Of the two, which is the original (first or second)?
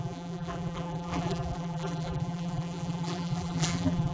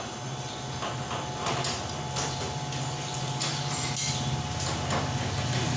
second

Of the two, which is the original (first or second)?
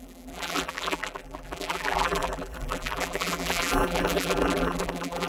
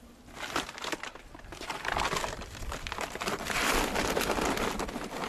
second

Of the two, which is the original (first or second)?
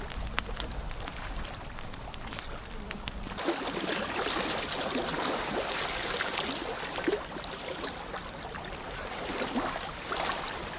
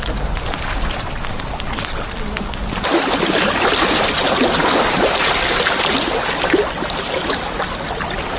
second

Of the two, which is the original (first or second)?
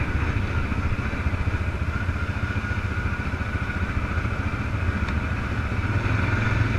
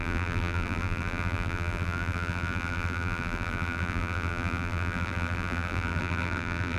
first